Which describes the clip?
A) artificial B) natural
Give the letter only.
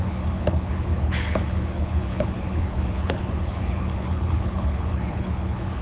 A